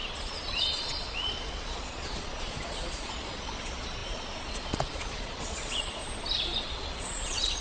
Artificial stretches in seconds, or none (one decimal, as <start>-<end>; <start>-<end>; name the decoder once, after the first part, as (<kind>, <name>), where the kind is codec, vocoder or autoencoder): 0.0-6.0 (vocoder, Vocos); 6.6-7.6